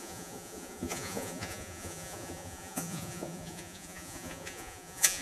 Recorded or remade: remade